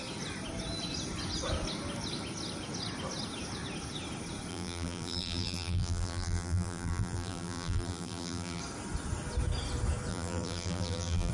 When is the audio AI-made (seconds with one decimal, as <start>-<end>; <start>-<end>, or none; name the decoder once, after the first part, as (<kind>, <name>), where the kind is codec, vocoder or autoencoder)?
4.5-8.6 (vocoder, BigVGAN v2); 10.1-11.3